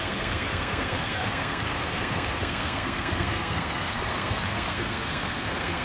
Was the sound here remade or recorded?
remade